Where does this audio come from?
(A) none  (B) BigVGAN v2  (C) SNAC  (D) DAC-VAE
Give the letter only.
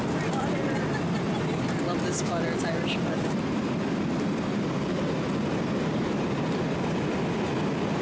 A